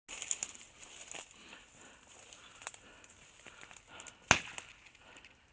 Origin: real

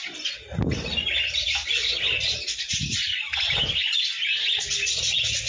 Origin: real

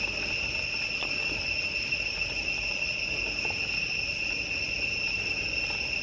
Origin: real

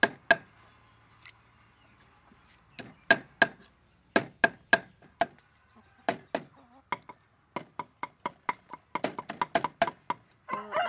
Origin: real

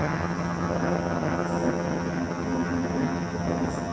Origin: fake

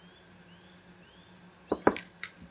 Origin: real